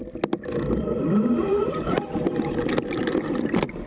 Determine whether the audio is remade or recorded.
recorded